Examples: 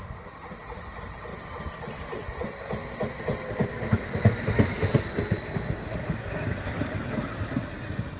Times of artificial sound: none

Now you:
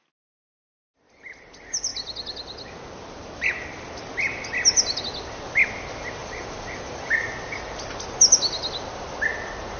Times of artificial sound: 6.2-7.3 (vocoder, BigVGAN v2)

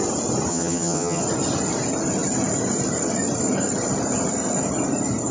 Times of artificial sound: 0.5-1.2 (vocoder, HiFi-GAN)